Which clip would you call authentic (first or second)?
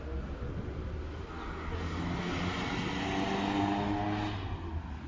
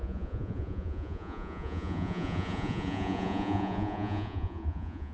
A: first